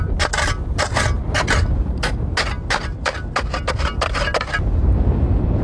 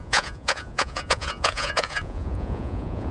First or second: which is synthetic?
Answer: second